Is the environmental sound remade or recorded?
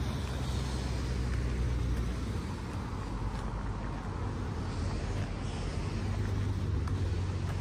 recorded